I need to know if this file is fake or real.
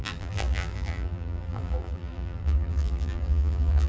fake